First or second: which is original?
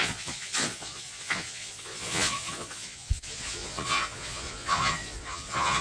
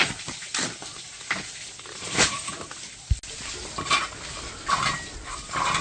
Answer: second